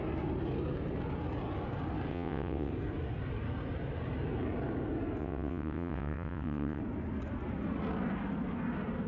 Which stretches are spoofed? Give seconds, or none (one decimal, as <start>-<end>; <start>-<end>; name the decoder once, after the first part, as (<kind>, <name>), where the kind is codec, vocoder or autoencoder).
2.1-2.7 (vocoder, WaveNeXt); 5.2-6.8